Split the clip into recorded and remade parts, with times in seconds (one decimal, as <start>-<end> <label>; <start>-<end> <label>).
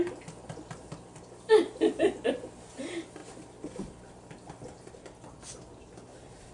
0.0-6.5 recorded